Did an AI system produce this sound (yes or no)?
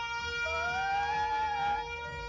no